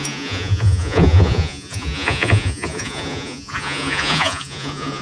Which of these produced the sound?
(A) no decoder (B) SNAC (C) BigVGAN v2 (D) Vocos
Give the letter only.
D